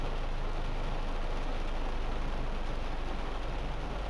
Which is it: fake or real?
real